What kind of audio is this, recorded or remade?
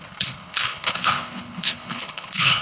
remade